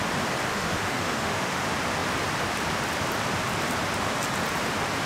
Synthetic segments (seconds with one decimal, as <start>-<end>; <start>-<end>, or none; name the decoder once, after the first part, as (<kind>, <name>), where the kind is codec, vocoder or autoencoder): 0.5-1.6 (autoencoder, DAC-VAE)

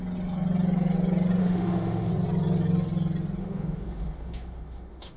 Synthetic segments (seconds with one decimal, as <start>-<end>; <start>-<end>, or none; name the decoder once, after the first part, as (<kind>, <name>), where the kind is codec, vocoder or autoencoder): 1.4-2.1 (autoencoder, DAC-VAE); 3.4-5.2

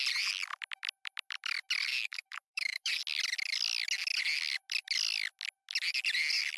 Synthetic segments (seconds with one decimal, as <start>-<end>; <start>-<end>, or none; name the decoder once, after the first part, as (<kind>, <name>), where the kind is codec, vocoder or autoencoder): 1.9-2.9 (autoencoder, DAC-VAE)

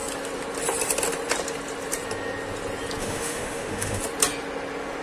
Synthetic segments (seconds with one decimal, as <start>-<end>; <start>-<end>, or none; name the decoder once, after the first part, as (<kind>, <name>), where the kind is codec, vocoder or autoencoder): 3.0-4.0 (autoencoder, DAC-VAE)

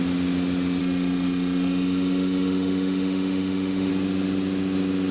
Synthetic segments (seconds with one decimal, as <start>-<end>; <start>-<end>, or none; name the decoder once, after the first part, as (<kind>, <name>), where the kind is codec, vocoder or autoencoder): 0.8-3.9 (autoencoder, DAC-VAE)

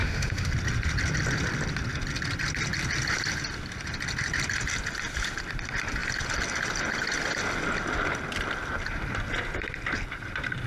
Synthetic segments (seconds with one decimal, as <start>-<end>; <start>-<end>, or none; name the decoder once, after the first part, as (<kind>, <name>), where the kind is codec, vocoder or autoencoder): 0.0-0.5 (autoencoder, DAC-VAE)

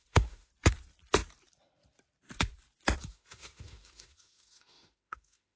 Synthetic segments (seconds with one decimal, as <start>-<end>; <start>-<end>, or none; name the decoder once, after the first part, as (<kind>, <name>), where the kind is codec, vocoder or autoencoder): 0.0-0.5 (autoencoder, DAC-VAE); 3.1-5.6

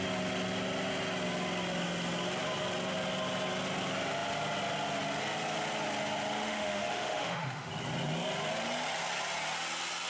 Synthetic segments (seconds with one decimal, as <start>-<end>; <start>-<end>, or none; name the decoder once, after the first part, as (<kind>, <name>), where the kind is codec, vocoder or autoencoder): 6.4-7.7 (autoencoder, DAC-VAE)